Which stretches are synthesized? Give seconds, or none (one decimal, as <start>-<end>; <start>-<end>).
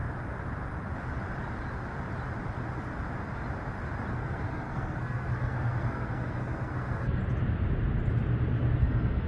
4.1-7.2; 8.8-9.3